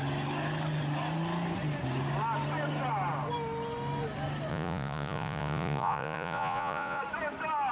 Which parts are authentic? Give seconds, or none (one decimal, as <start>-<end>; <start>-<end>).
0.0-4.5; 7.0-7.7